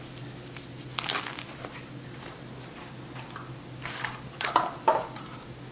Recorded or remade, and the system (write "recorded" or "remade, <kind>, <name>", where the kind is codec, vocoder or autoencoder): recorded